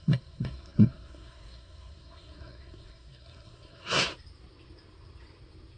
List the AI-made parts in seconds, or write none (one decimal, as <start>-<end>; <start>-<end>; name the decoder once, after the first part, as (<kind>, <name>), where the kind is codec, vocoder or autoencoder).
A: 0.0-4.1 (codec, SNAC)